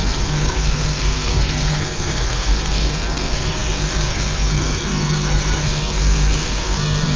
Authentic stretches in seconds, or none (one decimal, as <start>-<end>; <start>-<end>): none